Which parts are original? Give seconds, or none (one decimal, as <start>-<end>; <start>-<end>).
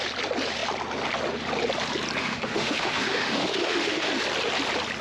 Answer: 0.0-2.2; 4.1-5.0